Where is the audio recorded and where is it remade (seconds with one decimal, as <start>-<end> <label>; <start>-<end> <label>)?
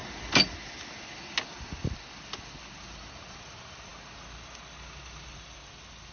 0.0-6.1 recorded